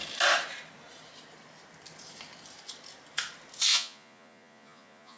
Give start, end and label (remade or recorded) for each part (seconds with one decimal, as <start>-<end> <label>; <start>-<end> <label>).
0.0-3.7 recorded; 3.7-5.2 remade

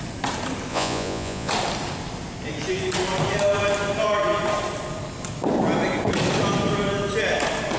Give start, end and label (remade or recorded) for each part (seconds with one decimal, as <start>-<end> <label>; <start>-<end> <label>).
0.0-0.7 recorded; 0.7-1.5 remade; 1.5-7.8 recorded

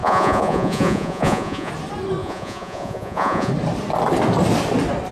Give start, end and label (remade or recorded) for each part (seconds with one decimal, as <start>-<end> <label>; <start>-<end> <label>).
0.0-1.7 remade; 1.7-2.2 recorded; 2.2-3.5 remade; 3.5-5.1 recorded

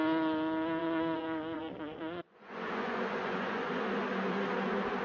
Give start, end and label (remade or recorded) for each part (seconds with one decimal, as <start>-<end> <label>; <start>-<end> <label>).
0.0-0.8 recorded; 0.8-3.8 remade; 3.8-5.0 recorded